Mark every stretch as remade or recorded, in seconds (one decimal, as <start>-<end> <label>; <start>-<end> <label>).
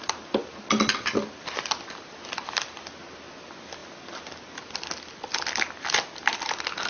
0.0-6.9 recorded